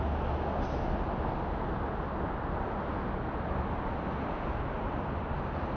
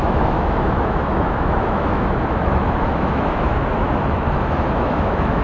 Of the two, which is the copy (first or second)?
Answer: second